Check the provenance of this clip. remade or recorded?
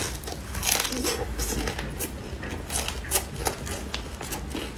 recorded